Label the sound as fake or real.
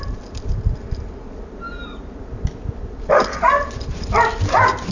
real